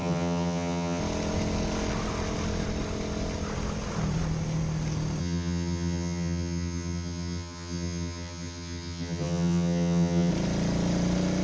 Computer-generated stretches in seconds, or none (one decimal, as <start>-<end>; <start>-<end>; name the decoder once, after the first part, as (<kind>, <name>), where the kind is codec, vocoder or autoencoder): 0.0-1.0 (vocoder, HiFi-GAN); 5.2-10.3